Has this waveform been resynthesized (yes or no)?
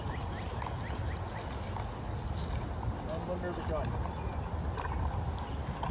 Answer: no